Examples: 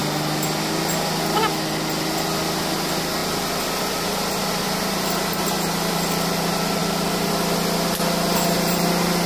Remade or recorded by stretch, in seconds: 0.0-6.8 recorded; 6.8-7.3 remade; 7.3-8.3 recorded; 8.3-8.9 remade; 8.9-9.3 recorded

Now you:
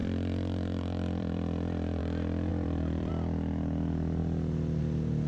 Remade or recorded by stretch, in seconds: 0.0-2.0 remade; 2.0-2.5 recorded; 2.5-3.1 remade; 3.1-5.3 recorded

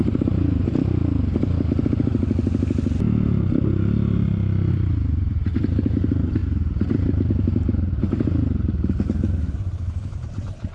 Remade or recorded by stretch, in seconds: 0.0-1.0 remade; 1.0-4.7 recorded; 4.7-10.7 remade